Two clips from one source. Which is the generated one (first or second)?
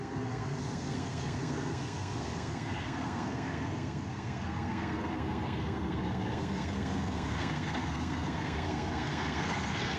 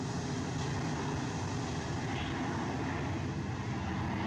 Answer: first